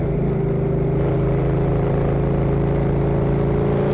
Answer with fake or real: real